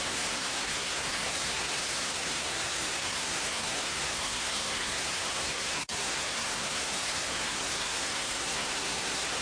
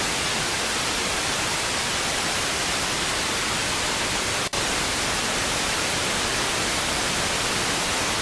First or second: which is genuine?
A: second